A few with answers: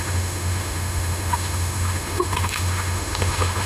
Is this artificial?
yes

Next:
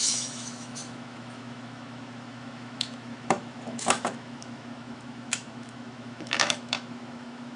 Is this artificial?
yes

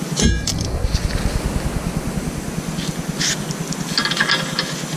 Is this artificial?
no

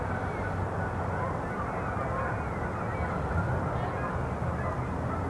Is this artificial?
no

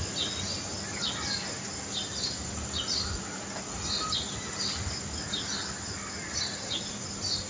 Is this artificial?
no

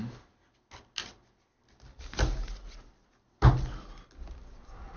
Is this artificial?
no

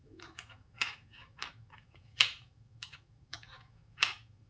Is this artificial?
yes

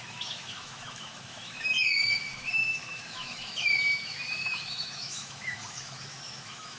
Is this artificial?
yes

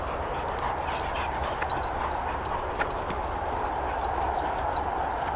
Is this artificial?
no